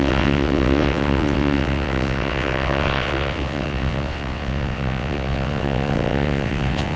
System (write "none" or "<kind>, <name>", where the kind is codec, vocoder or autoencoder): vocoder, WaveNeXt